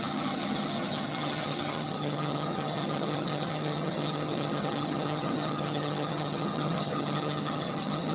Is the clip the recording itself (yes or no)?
no